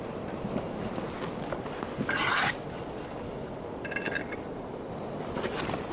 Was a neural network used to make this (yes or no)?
no